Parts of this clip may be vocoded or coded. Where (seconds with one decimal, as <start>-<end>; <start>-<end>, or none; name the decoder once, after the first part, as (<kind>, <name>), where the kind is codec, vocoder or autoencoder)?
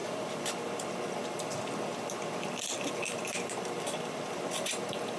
1.3-1.9 (vocoder, BigVGAN v2); 2.5-5.2